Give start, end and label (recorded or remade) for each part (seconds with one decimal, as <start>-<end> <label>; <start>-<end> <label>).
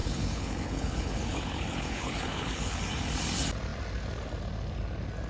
0.0-2.8 remade; 2.8-5.3 recorded